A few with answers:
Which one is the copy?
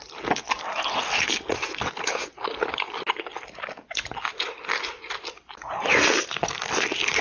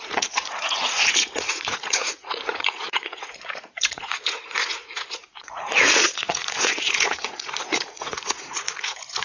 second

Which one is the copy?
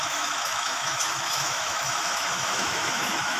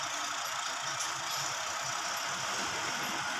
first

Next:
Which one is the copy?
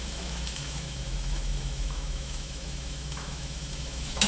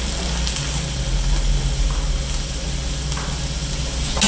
first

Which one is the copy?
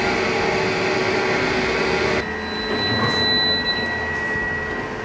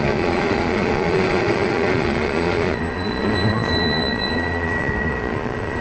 second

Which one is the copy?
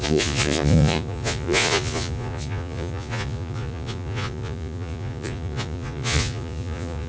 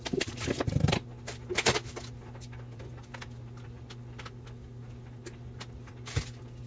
first